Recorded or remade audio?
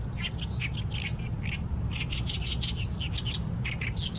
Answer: recorded